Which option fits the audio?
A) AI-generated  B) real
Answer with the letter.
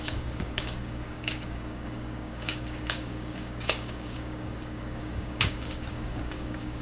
A